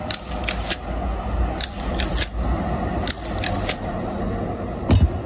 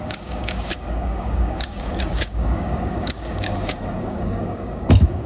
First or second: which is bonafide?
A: first